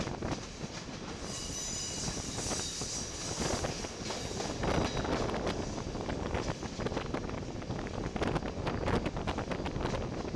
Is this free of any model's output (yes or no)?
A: yes